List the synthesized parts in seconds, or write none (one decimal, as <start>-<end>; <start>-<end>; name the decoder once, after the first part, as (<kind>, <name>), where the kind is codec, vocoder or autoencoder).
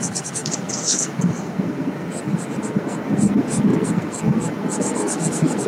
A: 0.0-5.7 (codec, SNAC)